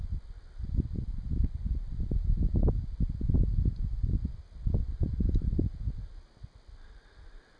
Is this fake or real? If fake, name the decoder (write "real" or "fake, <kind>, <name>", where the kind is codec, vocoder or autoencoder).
real